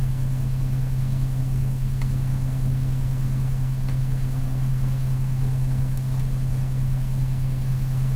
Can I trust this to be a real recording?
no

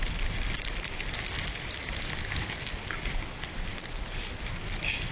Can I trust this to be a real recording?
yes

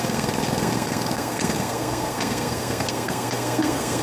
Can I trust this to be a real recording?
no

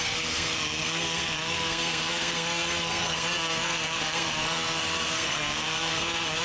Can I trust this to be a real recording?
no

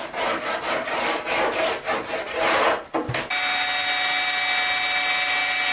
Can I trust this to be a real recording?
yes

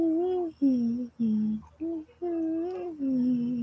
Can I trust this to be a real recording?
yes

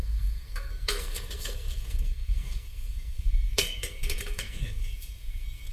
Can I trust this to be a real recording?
no